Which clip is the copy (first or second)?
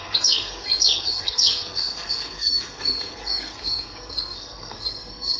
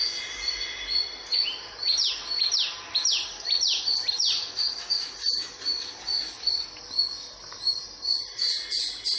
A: first